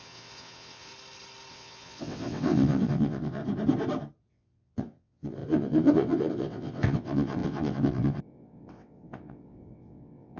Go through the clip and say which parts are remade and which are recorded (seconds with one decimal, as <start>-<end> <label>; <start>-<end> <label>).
0.0-0.9 remade; 0.9-1.5 recorded; 1.5-3.4 remade; 3.4-4.3 recorded; 4.3-10.4 remade